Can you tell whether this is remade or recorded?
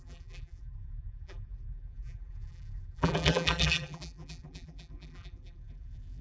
remade